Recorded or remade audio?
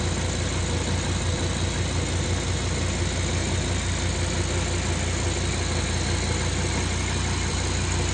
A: recorded